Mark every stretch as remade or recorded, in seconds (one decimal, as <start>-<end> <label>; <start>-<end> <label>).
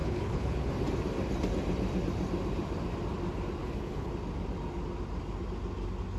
0.0-0.7 remade; 0.7-3.6 recorded; 3.6-4.1 remade; 4.1-6.2 recorded